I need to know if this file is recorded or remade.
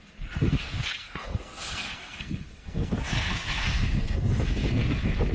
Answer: remade